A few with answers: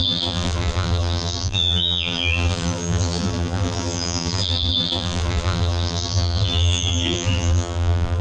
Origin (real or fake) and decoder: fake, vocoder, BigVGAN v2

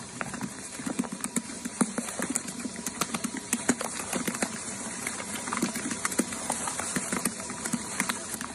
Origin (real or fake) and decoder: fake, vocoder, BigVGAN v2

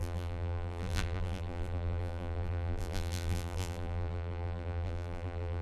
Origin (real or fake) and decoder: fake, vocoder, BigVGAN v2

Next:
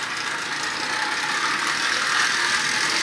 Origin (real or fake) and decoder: real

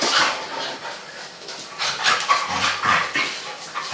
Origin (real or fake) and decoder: fake, vocoder, BigVGAN v2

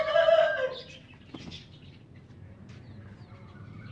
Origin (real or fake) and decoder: fake, vocoder, BigVGAN v2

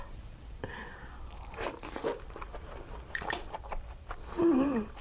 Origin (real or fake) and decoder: fake, vocoder, BigVGAN v2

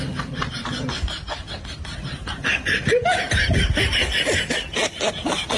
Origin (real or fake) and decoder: real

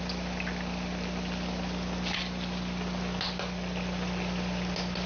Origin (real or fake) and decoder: real